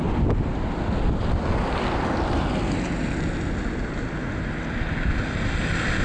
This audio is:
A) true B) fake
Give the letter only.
A